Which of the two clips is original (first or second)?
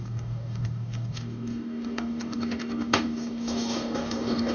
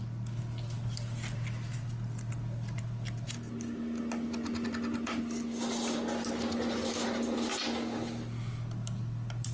second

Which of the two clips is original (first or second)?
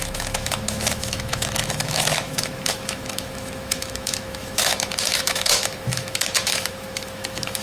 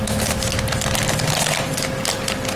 second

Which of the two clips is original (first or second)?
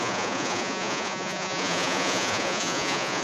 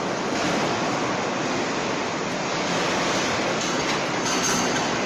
second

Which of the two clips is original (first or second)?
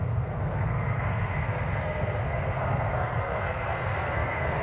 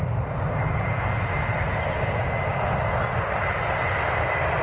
second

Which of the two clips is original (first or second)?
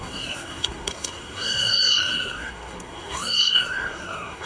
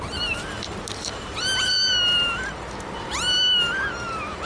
second